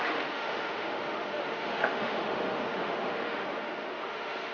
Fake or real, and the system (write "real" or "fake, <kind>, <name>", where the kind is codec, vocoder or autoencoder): fake, autoencoder, DAC-VAE